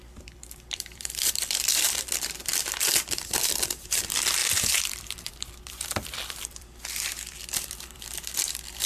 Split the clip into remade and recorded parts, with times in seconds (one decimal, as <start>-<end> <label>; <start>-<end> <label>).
0.0-2.5 remade; 2.5-3.0 recorded; 3.0-8.9 remade